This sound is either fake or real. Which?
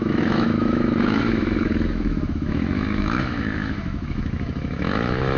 fake